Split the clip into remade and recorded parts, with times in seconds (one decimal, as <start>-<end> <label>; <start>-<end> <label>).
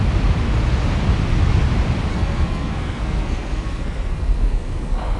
0.0-2.1 recorded; 2.1-5.2 remade